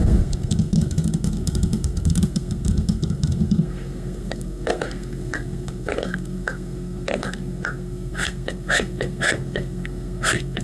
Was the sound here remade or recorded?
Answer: remade